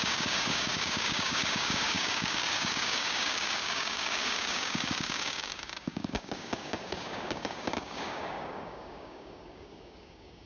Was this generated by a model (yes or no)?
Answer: yes